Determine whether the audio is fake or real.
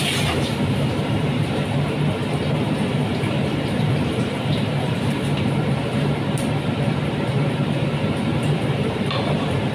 fake